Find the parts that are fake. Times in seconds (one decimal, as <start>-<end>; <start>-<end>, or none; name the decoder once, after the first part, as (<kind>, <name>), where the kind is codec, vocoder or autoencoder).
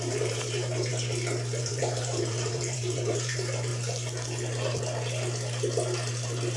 0.0-0.9 (vocoder, BigVGAN v2); 1.6-3.7; 6.1-6.6